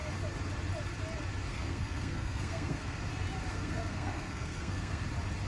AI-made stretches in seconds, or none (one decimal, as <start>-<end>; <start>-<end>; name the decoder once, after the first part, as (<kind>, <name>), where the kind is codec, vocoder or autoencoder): 1.5-3.0 (codec, SNAC); 3.5-5.0